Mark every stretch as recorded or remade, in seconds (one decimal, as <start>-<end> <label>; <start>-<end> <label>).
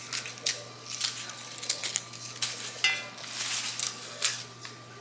0.0-3.8 recorded; 3.8-4.4 remade; 4.4-5.0 recorded